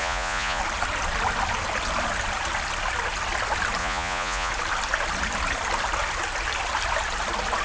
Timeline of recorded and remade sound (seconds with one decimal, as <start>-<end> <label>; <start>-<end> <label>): 0.0-0.6 remade; 0.6-3.8 recorded; 3.8-4.5 remade; 4.5-7.6 recorded